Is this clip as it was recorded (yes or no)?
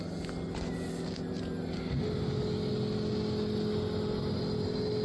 yes